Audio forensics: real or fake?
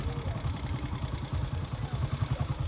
fake